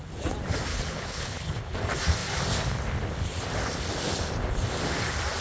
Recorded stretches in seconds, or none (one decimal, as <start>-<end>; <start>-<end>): 0.0-0.7; 1.6-5.4